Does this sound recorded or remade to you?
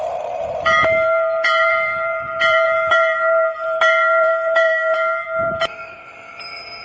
remade